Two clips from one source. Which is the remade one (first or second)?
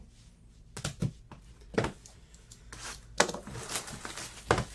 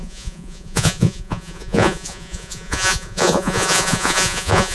second